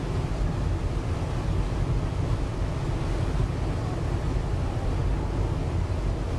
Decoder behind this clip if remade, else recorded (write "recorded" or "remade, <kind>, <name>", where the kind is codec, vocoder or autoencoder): recorded